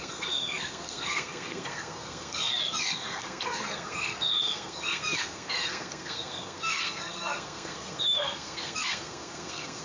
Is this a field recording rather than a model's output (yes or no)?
no